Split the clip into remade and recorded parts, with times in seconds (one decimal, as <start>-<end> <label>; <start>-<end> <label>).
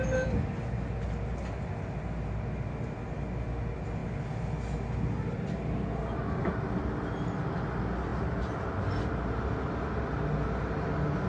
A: 0.0-11.3 recorded